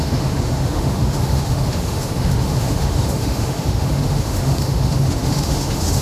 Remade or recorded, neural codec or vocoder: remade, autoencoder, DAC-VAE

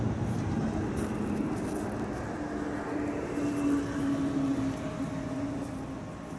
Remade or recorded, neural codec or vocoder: recorded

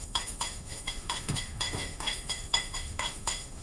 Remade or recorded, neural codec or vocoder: remade, autoencoder, DAC-VAE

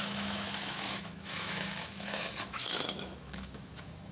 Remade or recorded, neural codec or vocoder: remade, autoencoder, DAC-VAE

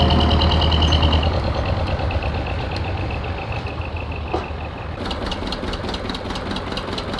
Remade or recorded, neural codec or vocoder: recorded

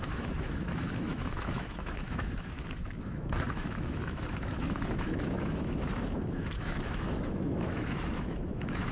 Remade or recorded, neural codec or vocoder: remade, autoencoder, DAC-VAE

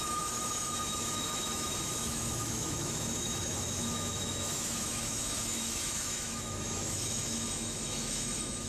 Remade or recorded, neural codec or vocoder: remade, autoencoder, DAC-VAE